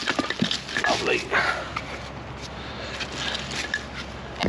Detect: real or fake real